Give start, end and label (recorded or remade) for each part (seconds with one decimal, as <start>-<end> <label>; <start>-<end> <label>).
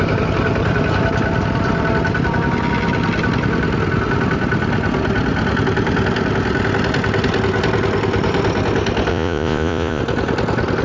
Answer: 0.0-9.1 recorded; 9.1-10.0 remade; 10.0-10.8 recorded